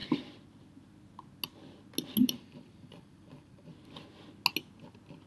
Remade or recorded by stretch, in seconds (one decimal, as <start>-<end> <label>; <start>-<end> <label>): 0.0-2.2 recorded; 2.2-3.7 remade; 3.7-5.3 recorded